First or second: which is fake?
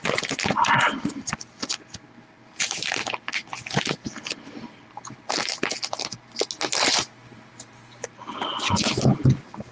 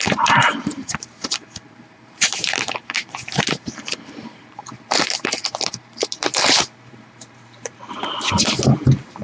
second